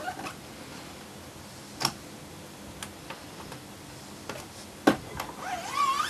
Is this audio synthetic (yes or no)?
no